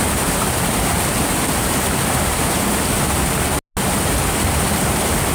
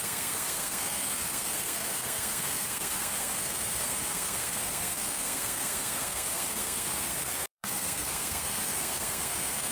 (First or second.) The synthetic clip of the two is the second